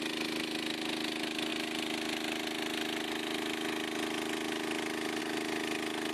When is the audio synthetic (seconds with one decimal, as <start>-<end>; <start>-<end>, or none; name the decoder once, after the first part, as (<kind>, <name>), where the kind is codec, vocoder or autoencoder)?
none